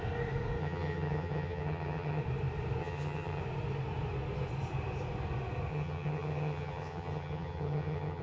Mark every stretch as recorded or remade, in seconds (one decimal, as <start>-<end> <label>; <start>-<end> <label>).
0.0-0.6 recorded; 0.6-2.2 remade; 2.2-2.8 recorded; 2.8-3.4 remade; 3.4-5.7 recorded; 5.7-8.2 remade